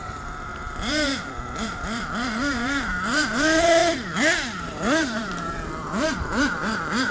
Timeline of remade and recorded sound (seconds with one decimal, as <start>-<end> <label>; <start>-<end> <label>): 0.0-3.8 remade; 3.8-4.6 recorded; 4.6-7.1 remade